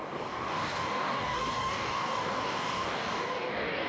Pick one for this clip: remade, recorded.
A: remade